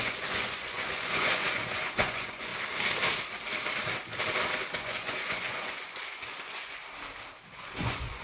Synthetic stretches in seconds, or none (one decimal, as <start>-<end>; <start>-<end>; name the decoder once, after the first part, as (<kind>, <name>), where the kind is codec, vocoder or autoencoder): 0.0-2.5 (vocoder, Vocos); 4.7-6.8; 7.5-8.2